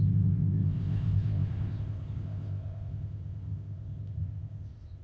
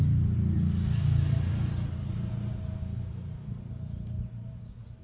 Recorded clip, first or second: second